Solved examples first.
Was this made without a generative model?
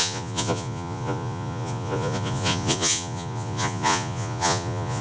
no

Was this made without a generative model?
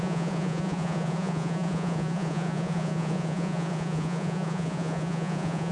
no